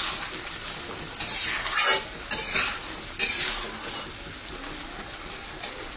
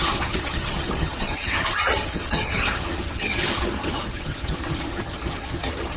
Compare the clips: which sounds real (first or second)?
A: first